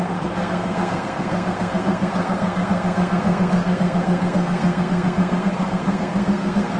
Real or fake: fake